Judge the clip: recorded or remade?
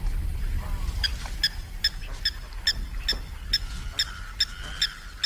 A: recorded